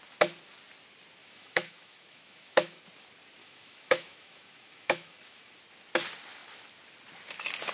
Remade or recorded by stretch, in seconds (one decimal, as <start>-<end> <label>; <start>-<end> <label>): 0.0-1.2 recorded; 1.2-2.8 remade; 2.8-3.4 recorded; 3.4-5.5 remade; 5.5-7.7 recorded